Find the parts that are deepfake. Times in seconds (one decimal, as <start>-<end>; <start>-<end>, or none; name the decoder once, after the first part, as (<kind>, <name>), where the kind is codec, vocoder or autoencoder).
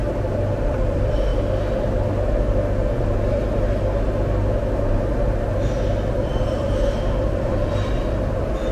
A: 0.6-1.3 (vocoder, BigVGAN v2); 6.1-8.7